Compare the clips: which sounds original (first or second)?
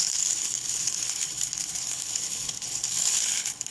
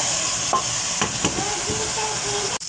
second